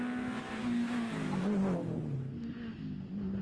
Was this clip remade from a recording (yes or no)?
no